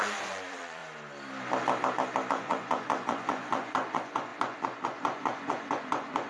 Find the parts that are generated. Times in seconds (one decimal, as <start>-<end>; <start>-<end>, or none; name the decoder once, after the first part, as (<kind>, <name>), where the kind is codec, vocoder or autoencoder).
0.0-0.8 (vocoder, Vocos); 2.3-6.3